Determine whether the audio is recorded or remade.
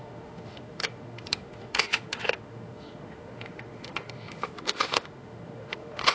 remade